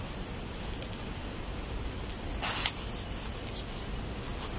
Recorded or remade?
recorded